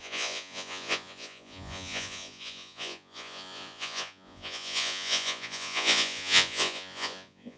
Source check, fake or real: fake